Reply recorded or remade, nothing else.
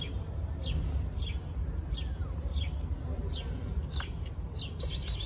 recorded